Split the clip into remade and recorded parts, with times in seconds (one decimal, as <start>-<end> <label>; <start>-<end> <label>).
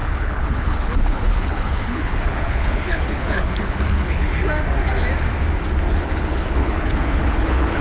0.0-4.3 remade; 4.3-5.9 recorded; 5.9-7.8 remade